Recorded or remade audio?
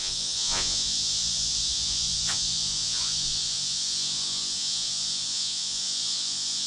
remade